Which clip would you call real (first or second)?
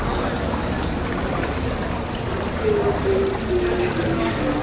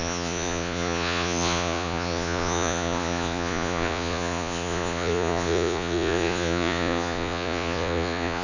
first